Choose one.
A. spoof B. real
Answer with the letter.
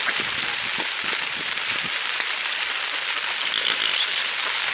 B